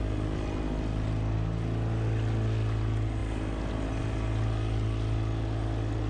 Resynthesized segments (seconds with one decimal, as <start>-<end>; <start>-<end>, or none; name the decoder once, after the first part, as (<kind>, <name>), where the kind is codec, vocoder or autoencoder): none